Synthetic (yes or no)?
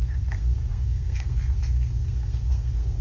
yes